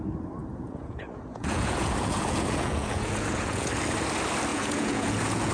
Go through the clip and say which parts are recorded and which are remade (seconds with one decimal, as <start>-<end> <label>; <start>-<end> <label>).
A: 0.0-0.4 recorded; 0.4-3.7 remade; 3.7-4.5 recorded; 4.5-5.5 remade